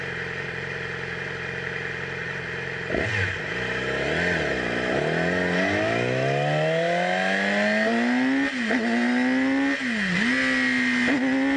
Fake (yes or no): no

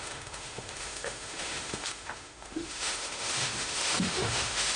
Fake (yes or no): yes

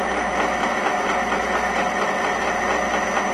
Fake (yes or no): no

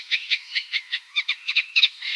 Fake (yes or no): yes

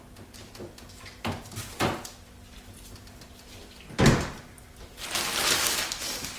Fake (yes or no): no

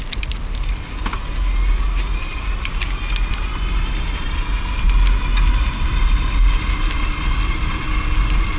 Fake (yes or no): no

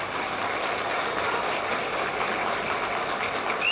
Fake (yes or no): no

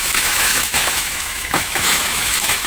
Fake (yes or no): yes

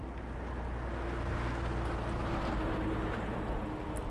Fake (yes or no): no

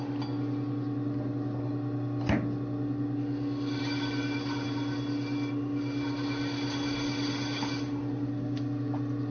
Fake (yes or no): no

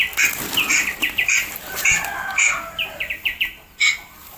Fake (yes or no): no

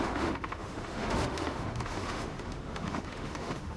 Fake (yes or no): yes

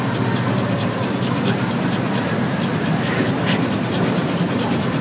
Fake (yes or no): no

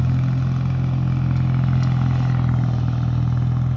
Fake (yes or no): no